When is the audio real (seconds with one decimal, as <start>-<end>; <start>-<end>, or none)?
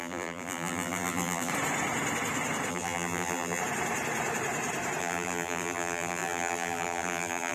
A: 1.5-2.7; 3.6-5.0